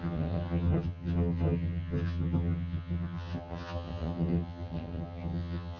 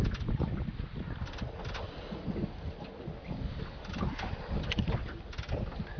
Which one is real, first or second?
second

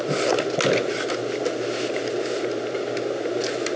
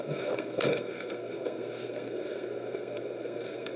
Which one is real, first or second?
first